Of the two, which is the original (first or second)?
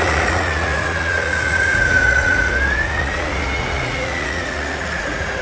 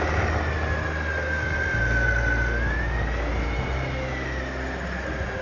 second